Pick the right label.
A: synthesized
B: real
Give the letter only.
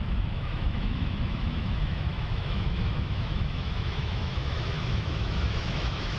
A